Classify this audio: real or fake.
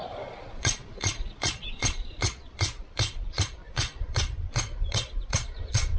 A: fake